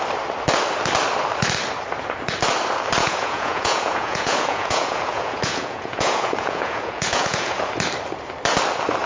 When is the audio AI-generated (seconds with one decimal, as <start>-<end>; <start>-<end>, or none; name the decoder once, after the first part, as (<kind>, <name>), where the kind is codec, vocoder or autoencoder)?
3.0-7.7 (vocoder, Vocos)